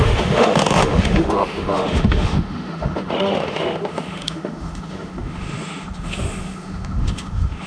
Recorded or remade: remade